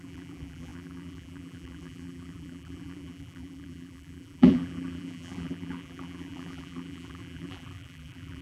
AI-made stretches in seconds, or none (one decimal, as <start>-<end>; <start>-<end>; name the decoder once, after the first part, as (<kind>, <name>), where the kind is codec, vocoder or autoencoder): 0.0-8.4 (vocoder, BigVGAN v2)